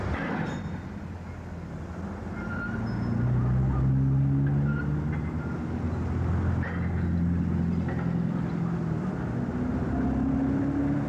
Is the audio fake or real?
real